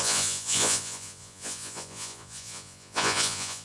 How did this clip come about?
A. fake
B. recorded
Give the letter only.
A